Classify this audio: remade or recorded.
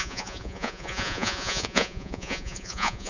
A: remade